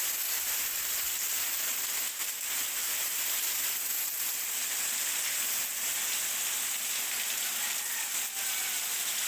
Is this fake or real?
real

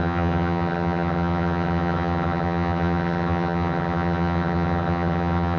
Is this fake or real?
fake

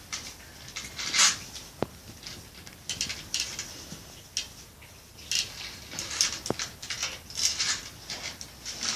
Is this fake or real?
real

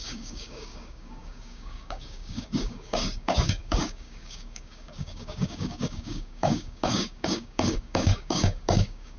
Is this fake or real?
fake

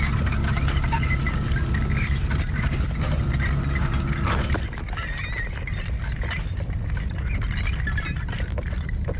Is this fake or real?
real